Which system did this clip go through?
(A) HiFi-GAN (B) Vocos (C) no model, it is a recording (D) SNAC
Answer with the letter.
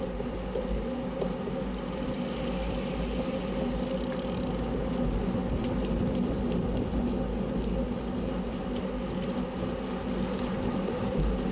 C